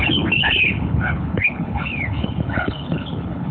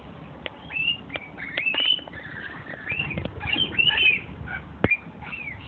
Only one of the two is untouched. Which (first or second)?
second